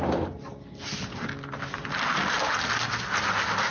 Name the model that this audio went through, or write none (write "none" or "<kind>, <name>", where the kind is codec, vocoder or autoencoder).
none